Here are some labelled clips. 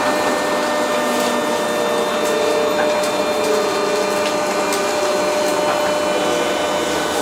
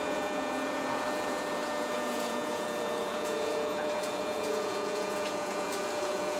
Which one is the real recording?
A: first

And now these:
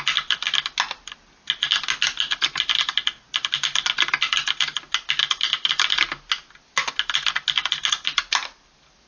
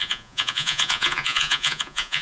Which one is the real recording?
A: first